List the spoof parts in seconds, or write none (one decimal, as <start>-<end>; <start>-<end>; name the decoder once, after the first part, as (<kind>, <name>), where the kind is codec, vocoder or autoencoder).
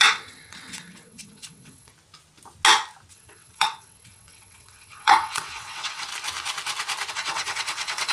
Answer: 0.0-1.9 (vocoder, WaveNeXt); 3.1-6.1; 7.1-8.1